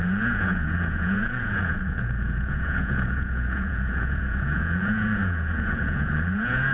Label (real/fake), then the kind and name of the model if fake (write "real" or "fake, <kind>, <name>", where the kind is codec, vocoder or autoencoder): fake, vocoder, Vocos